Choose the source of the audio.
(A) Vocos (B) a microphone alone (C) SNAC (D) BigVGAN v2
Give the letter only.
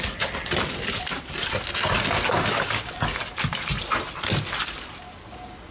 B